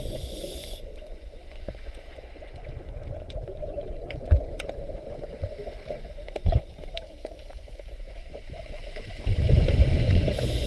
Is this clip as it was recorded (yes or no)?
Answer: no